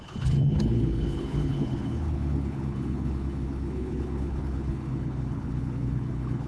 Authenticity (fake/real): fake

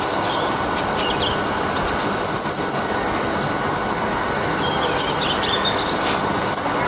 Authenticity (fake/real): real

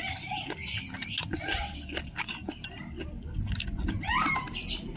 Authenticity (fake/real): real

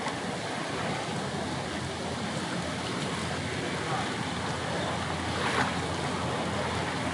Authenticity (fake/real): real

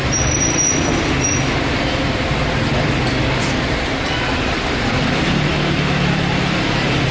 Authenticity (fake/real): fake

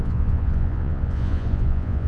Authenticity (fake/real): fake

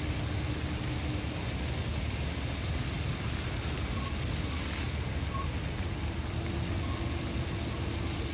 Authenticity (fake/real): real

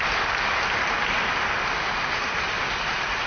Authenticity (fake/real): real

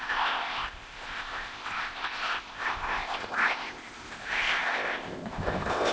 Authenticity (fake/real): fake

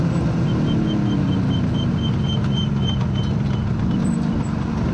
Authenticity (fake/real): real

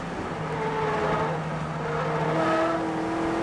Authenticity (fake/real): real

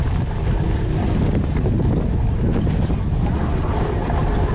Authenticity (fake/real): real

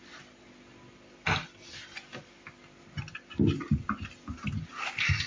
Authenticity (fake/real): real